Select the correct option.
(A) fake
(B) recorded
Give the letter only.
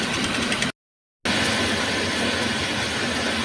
B